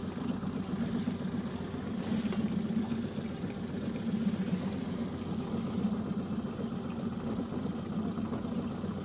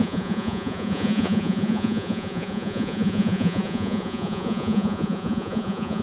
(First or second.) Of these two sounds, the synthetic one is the second